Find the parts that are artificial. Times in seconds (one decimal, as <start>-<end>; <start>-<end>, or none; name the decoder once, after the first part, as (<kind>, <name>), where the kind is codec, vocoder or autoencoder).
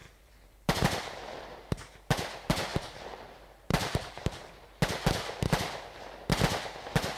0.0-1.6 (vocoder, BigVGAN v2); 2.7-4.5